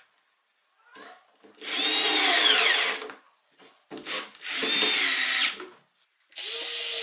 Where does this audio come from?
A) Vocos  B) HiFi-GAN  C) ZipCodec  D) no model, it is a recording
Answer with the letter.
D